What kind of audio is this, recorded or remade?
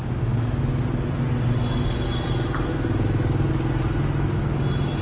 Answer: recorded